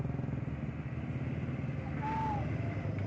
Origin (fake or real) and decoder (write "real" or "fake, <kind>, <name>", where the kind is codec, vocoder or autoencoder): real